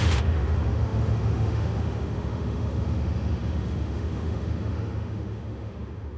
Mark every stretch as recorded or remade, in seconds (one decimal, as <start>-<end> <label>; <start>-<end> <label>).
0.0-6.2 remade